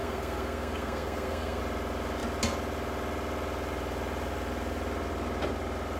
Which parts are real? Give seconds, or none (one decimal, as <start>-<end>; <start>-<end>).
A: 1.6-6.0